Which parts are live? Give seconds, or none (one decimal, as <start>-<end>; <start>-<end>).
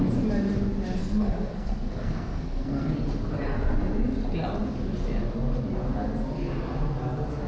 0.0-1.0; 3.0-7.5